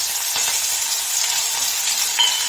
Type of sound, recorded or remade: recorded